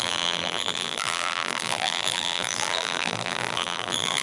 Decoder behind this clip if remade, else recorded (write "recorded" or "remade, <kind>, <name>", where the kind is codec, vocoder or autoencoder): remade, vocoder, BigVGAN v2